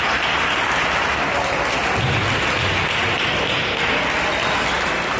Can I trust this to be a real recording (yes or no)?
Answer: yes